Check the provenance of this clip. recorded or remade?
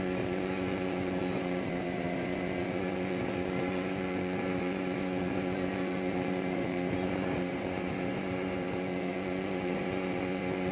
remade